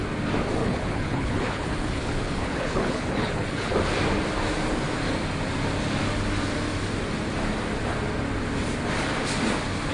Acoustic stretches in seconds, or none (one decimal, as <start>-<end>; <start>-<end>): 0.0-0.6; 3.7-9.9